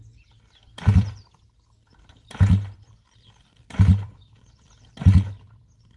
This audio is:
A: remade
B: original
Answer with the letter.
A